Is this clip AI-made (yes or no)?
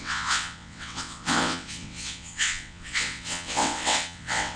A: yes